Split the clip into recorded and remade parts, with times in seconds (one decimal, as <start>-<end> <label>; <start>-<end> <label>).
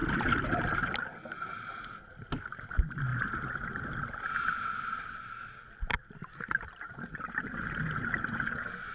0.0-8.9 recorded